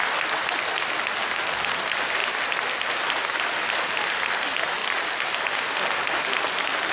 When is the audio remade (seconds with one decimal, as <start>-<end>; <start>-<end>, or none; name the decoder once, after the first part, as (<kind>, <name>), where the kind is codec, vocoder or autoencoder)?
0.0-1.2 (vocoder, BigVGAN v2); 1.8-2.2; 3.9-6.9